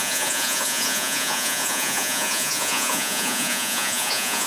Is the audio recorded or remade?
remade